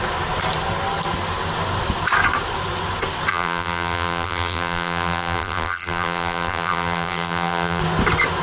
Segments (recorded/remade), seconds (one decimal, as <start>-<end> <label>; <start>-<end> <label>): 0.0-3.3 recorded; 3.3-7.8 remade; 7.8-8.4 recorded

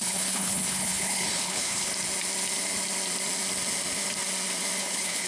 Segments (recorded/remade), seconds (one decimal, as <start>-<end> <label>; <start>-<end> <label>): 0.0-1.9 remade; 1.9-4.8 recorded; 4.8-5.3 remade

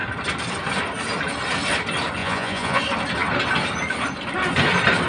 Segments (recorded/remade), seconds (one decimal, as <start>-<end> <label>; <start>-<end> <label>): 0.0-2.2 recorded; 2.2-2.8 remade; 2.8-5.1 recorded

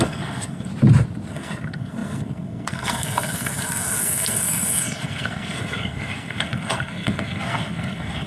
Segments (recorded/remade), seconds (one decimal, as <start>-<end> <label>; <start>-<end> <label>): 0.0-0.7 remade; 0.7-1.3 recorded; 1.3-8.3 remade

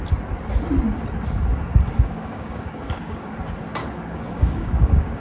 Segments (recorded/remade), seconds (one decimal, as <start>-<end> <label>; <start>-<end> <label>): 0.0-1.5 recorded; 1.5-3.3 remade; 3.3-3.8 recorded; 3.8-5.2 remade

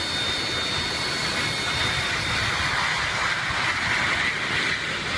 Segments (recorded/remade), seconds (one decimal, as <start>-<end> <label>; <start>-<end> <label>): 0.0-5.2 recorded

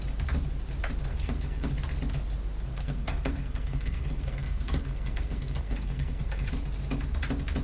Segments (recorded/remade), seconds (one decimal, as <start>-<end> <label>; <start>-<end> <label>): 0.0-1.1 recorded; 1.1-1.7 remade; 1.7-2.7 recorded; 2.7-6.5 remade; 6.5-7.6 recorded

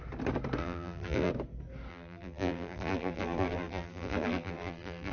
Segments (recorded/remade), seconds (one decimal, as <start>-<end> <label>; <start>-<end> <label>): 0.0-0.6 recorded; 0.6-1.3 remade; 1.3-1.9 recorded; 1.9-5.1 remade